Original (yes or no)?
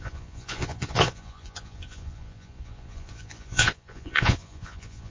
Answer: no